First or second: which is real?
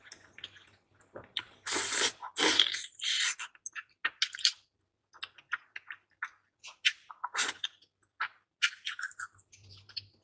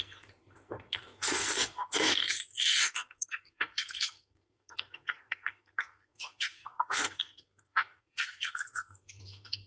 first